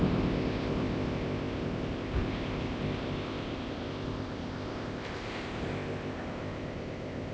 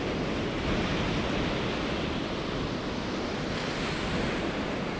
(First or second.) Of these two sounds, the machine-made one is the first